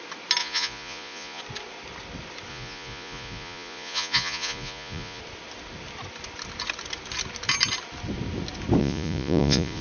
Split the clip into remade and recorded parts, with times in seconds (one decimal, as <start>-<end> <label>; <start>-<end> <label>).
0.0-0.4 recorded; 0.4-1.4 remade; 1.4-2.5 recorded; 2.5-5.2 remade; 5.2-8.8 recorded; 8.8-9.8 remade